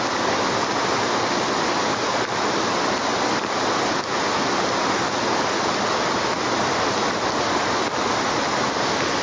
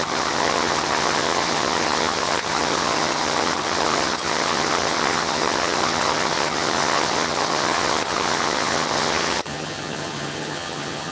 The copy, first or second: second